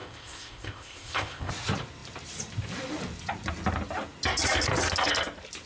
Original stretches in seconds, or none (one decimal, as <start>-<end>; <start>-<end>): 1.5-5.7